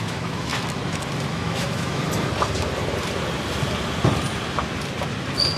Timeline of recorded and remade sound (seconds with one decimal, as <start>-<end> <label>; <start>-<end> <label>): 0.0-0.5 remade; 0.5-1.3 recorded; 1.3-2.0 remade; 2.0-5.6 recorded